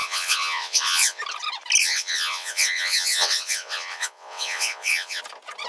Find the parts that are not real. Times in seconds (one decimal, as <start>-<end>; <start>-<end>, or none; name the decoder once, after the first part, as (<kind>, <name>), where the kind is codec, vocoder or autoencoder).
0.0-1.2 (vocoder, WaveNeXt); 1.8-5.2